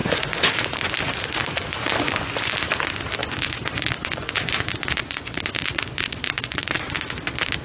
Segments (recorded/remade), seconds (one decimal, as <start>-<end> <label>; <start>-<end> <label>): 0.0-0.5 remade; 0.5-1.4 recorded; 1.4-2.3 remade; 2.3-3.2 recorded; 3.2-6.7 remade; 6.7-7.6 recorded